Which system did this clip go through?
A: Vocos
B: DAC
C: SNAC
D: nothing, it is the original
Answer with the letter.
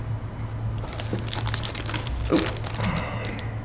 D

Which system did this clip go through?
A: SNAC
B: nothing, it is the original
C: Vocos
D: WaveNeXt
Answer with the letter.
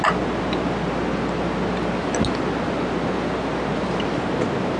B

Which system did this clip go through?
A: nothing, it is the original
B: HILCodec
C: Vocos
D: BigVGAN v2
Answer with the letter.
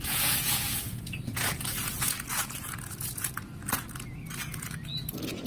C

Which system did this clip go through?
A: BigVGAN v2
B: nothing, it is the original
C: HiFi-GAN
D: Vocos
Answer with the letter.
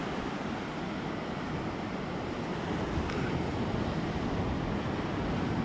B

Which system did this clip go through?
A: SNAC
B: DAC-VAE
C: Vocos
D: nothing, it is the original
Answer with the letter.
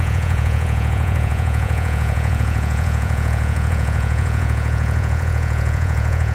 C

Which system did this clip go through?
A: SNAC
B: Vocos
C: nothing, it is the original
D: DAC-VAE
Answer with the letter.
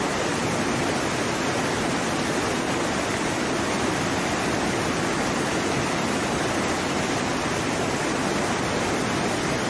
C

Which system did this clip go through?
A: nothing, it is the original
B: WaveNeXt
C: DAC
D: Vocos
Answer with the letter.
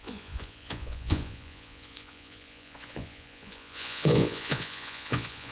D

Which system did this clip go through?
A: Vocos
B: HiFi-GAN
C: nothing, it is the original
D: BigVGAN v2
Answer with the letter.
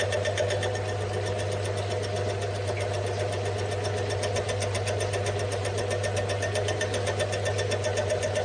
C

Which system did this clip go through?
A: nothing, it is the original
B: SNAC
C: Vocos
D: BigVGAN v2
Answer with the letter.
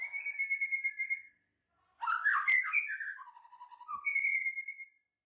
A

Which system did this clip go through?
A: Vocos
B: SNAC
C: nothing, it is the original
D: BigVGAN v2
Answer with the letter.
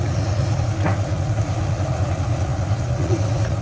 A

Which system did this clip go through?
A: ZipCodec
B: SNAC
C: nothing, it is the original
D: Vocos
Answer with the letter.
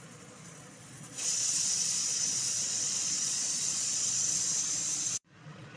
D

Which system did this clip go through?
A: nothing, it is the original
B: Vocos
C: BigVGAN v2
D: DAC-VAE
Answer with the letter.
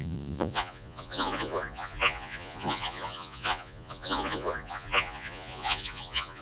B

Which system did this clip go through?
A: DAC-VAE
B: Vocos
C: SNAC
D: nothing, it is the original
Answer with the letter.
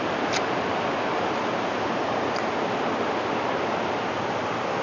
D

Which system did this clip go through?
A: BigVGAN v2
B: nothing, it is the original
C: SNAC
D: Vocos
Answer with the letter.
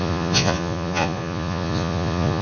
D